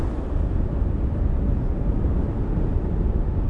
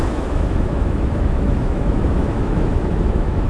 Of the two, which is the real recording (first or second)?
first